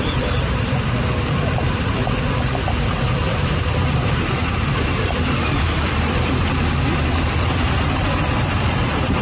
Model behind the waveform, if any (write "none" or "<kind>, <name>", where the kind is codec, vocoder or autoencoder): vocoder, BigVGAN v2